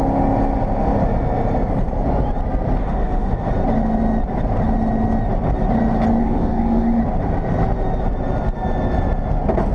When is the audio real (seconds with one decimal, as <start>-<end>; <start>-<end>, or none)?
0.0-2.8; 3.5-6.2; 7.0-9.7